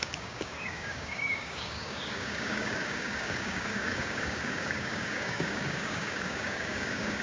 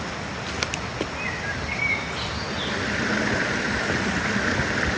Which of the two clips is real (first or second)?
second